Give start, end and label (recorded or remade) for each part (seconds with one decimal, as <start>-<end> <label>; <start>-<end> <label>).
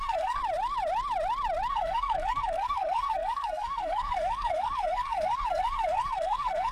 0.0-0.4 remade; 0.4-1.7 recorded; 1.7-6.7 remade